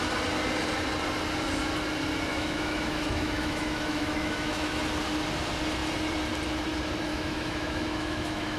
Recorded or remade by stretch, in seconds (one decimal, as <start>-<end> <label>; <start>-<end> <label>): 0.0-2.3 recorded; 2.3-4.8 remade; 4.8-7.1 recorded; 7.1-8.6 remade